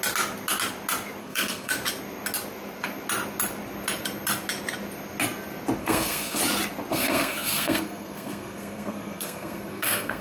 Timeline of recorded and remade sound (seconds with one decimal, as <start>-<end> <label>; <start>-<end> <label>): 0.0-1.2 recorded; 1.2-1.7 remade; 1.7-5.8 recorded; 5.8-6.4 remade; 6.4-6.9 recorded; 6.9-10.2 remade